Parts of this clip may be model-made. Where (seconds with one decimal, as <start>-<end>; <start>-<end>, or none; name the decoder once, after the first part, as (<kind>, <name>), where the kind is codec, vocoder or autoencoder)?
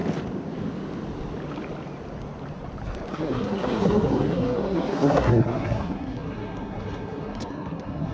3.1-8.1 (codec, SNAC)